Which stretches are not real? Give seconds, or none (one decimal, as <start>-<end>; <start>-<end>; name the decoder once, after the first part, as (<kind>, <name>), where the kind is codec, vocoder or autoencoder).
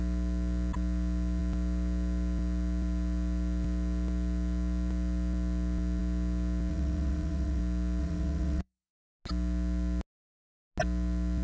6.7-7.6 (vocoder, WaveNeXt); 8.0-8.9